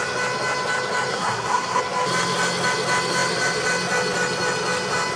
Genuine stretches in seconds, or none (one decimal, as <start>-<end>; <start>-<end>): 0.0-1.1; 1.8-5.2